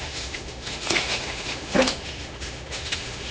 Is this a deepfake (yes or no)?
yes